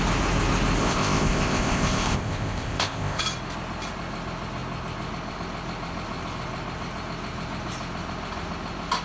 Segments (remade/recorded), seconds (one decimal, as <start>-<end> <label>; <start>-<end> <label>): 0.0-0.8 recorded; 0.8-3.2 remade; 3.2-9.0 recorded